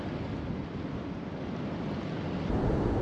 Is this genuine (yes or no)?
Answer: yes